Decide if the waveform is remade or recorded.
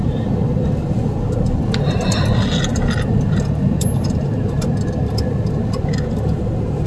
recorded